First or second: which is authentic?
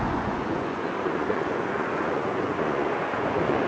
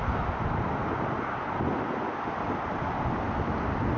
second